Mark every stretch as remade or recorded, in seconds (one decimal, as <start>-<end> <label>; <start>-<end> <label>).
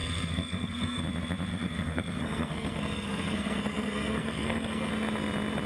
0.0-1.0 remade; 1.0-1.5 recorded; 1.5-4.9 remade; 4.9-5.7 recorded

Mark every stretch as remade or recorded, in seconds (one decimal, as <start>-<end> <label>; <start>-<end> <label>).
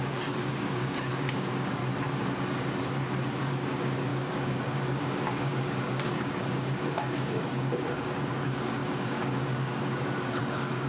0.0-1.8 remade; 1.8-3.4 recorded; 3.4-10.9 remade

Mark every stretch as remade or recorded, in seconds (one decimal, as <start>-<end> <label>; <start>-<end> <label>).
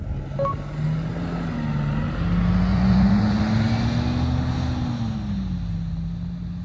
0.0-2.7 recorded; 2.7-3.4 remade; 3.4-6.6 recorded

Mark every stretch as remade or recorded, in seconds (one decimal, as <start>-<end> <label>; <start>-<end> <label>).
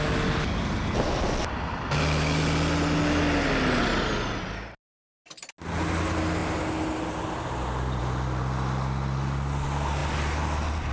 0.0-10.9 recorded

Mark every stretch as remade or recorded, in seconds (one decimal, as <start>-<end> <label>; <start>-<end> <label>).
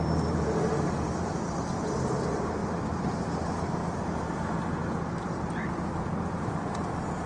0.0-7.3 recorded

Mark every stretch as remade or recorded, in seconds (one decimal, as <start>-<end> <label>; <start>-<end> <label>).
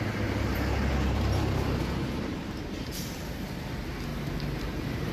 0.0-0.5 recorded; 0.5-3.5 remade; 3.5-4.1 recorded; 4.1-5.1 remade